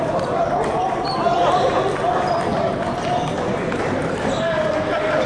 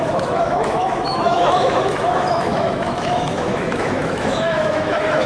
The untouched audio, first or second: first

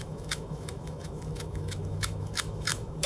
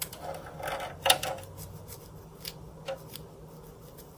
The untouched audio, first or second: second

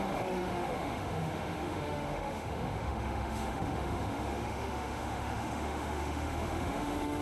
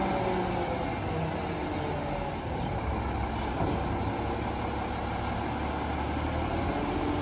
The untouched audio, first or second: second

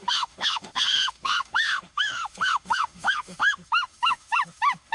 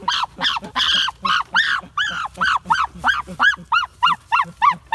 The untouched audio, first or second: second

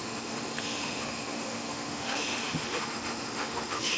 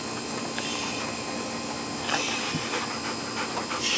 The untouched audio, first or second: second